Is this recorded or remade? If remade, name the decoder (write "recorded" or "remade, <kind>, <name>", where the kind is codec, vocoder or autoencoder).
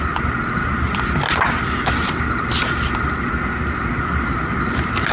recorded